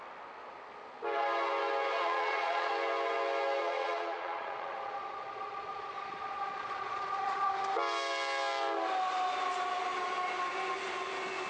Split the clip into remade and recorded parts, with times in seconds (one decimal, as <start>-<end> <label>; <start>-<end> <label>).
0.0-2.0 recorded; 2.0-2.7 remade; 2.7-3.6 recorded; 3.6-7.5 remade; 7.5-11.5 recorded